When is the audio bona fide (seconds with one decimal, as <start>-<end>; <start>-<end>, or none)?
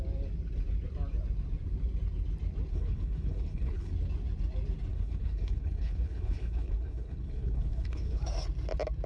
0.0-2.7; 3.9-4.9; 8.2-9.1